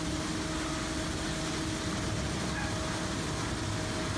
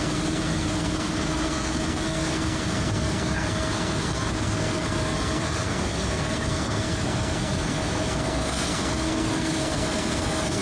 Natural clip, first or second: first